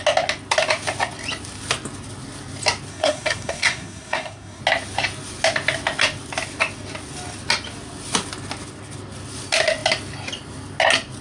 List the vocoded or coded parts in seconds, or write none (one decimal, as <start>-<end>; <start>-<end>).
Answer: 2.9-4.6